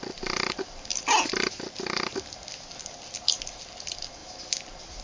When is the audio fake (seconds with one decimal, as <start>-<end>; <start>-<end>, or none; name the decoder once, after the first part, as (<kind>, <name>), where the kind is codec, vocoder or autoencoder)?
none